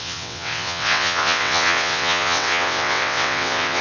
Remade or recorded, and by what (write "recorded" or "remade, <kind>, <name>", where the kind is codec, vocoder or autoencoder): remade, vocoder, WaveNeXt